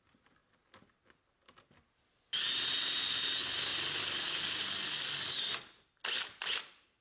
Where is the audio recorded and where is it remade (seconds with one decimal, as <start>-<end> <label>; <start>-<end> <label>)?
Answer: 0.0-7.0 recorded